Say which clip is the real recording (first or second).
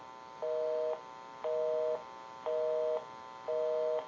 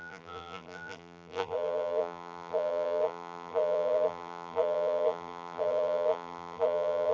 first